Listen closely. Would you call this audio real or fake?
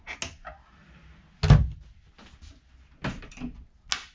real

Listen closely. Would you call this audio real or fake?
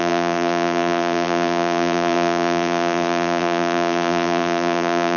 fake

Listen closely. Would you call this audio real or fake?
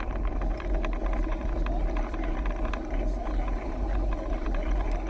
real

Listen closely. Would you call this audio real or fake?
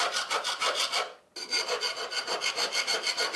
real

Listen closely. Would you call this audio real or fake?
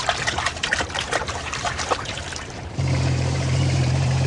fake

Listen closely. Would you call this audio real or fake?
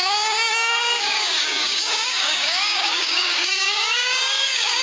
fake